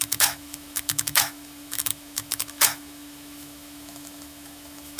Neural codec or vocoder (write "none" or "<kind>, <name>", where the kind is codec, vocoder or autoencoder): autoencoder, DAC-VAE